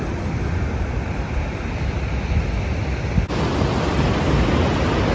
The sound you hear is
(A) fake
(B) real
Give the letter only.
B